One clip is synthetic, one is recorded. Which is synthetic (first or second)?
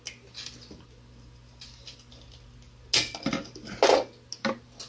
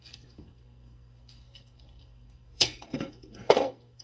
second